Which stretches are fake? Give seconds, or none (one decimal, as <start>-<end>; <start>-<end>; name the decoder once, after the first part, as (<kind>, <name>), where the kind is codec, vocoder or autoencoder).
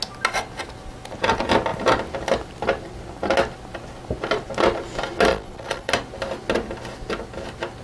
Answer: 5.3-5.9 (vocoder, Vocos)